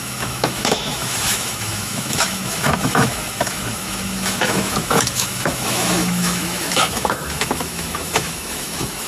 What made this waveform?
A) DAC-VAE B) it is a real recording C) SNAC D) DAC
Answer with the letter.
A